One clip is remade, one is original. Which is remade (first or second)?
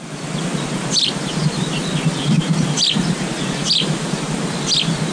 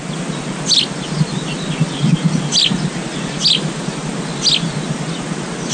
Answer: first